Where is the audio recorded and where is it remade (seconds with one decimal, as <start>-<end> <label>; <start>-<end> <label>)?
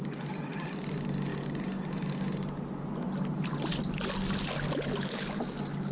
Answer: 0.0-5.9 recorded